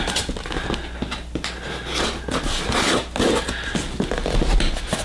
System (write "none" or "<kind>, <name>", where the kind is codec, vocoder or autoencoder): none